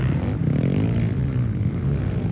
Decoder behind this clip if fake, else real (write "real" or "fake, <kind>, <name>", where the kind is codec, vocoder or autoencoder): real